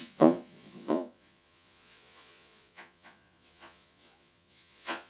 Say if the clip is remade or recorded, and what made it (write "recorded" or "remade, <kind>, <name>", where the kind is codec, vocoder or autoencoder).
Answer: remade, vocoder, Vocos